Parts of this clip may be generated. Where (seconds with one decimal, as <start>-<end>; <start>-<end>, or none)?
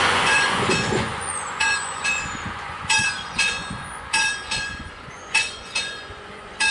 0.0-6.7